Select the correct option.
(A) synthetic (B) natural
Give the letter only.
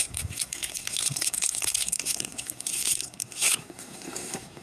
A